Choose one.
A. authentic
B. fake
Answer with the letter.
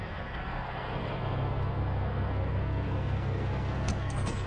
B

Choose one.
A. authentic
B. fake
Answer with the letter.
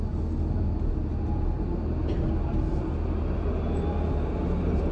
A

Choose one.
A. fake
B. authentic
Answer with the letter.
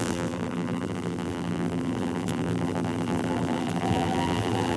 A